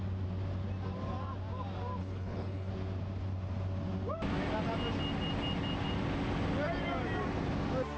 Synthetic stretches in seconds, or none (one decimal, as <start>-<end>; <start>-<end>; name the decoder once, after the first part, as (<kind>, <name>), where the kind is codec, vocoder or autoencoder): 2.0-2.7 (codec, HILCodec)